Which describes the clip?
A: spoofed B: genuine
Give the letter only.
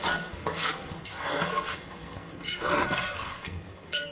A